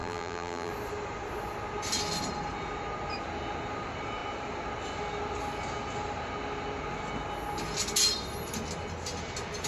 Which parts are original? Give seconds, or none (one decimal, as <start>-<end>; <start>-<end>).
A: 0.7-9.7